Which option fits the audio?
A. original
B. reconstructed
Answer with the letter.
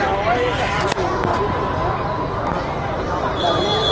A